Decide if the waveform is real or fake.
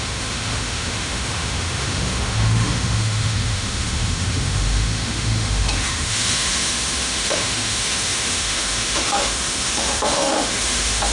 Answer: fake